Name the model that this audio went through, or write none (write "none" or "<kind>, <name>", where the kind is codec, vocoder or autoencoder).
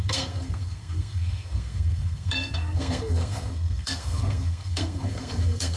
codec, SNAC